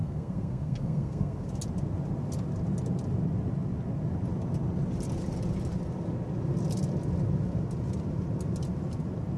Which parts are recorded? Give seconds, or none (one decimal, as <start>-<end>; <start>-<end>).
1.5-9.4